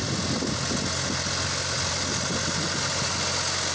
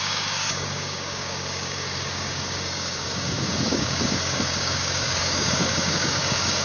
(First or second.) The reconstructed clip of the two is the second